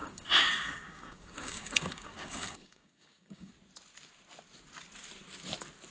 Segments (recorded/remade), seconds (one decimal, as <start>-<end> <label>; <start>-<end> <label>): 0.0-3.5 remade; 3.5-5.9 recorded